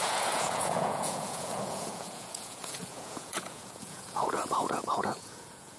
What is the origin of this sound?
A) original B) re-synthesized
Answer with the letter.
B